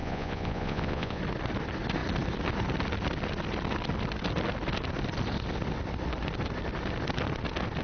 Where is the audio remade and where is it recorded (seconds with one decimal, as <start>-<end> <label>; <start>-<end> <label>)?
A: 0.0-1.2 remade; 1.2-7.8 recorded